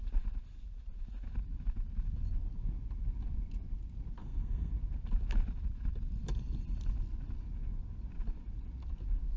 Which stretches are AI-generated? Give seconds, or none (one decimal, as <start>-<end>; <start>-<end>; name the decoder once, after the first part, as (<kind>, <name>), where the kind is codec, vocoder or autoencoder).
4.2-4.7 (codec, SNAC)